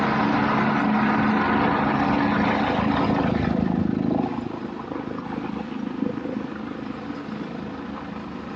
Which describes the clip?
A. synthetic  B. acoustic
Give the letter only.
B